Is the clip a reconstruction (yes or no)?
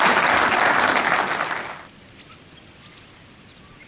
no